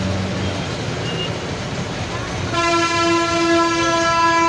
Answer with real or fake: real